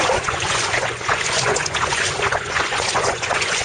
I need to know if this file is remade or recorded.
remade